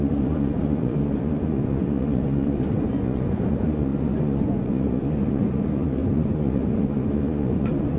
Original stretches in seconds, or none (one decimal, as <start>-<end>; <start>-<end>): none